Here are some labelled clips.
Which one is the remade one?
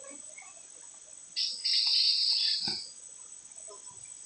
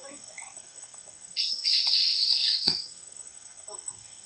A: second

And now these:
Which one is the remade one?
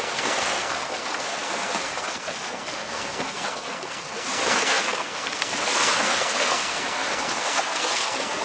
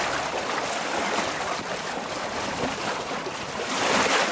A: first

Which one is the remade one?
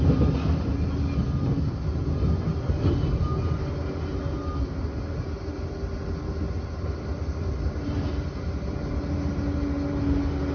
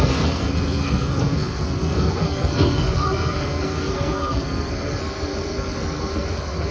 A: second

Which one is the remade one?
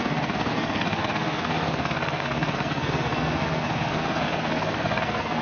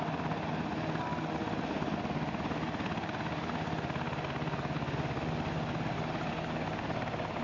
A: first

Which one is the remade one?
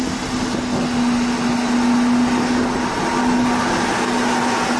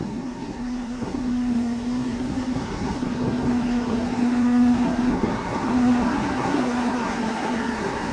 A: second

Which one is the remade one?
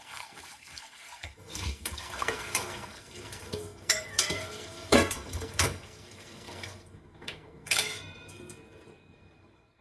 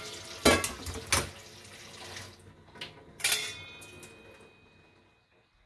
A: first